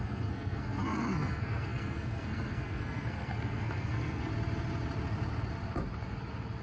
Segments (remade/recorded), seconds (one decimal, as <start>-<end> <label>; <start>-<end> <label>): 0.0-4.3 remade; 4.3-6.6 recorded